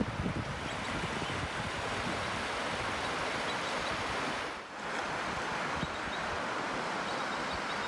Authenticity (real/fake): real